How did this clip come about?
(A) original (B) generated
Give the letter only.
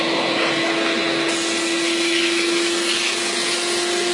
A